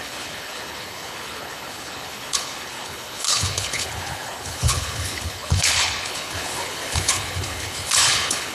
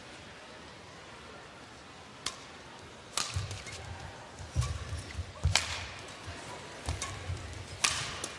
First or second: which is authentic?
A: second